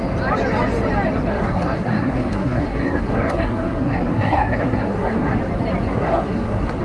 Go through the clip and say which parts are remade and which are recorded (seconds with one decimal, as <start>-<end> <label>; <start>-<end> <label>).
0.0-1.3 recorded; 1.3-5.4 remade; 5.4-5.9 recorded; 5.9-6.8 remade